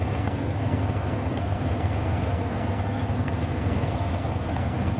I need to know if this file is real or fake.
fake